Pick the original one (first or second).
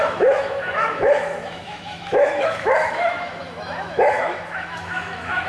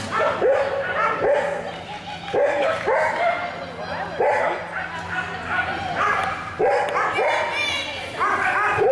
second